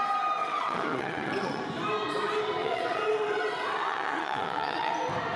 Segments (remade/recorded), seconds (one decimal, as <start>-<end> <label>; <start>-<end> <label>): 0.0-0.4 recorded; 0.4-1.6 remade; 1.6-2.6 recorded; 2.6-4.9 remade; 4.9-5.4 recorded